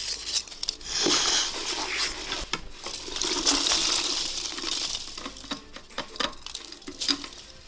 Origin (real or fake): real